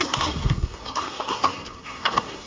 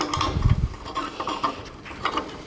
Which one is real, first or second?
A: second